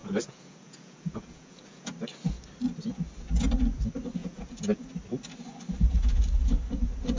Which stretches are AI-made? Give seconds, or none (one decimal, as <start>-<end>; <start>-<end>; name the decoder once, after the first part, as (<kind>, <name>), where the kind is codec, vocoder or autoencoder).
0.0-1.9 (vocoder, Vocos); 4.2-4.9